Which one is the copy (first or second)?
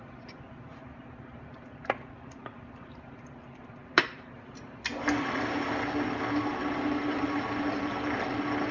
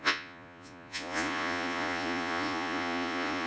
second